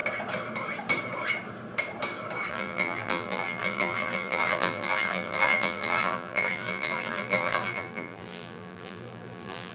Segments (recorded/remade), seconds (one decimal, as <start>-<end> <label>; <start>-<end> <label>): 0.0-2.5 recorded; 2.5-9.7 remade